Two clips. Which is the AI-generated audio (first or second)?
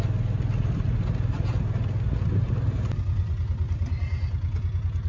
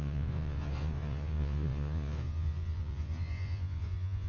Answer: second